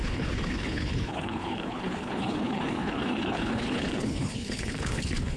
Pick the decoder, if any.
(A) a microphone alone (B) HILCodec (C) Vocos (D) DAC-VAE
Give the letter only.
B